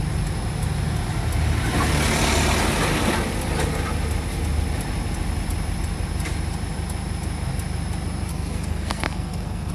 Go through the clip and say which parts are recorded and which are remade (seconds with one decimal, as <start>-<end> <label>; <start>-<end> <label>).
0.0-8.3 recorded; 8.3-9.7 remade